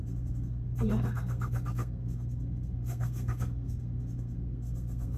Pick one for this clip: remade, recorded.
remade